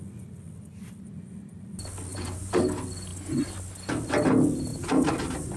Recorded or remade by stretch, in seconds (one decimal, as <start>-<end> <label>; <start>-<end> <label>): 0.0-2.1 recorded; 2.1-2.6 remade; 2.6-4.7 recorded; 4.7-5.6 remade

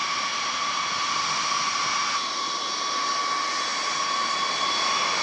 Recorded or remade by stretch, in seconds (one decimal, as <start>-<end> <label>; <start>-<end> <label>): 0.0-5.2 recorded

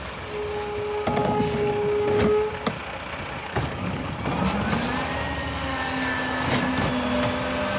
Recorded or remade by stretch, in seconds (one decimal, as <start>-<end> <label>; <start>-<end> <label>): 0.0-1.2 recorded; 1.2-1.7 remade; 1.7-3.4 recorded; 3.4-4.1 remade; 4.1-5.4 recorded; 5.4-6.7 remade; 6.7-7.8 recorded